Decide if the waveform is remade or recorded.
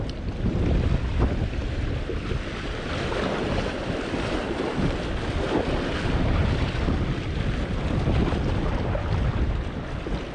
recorded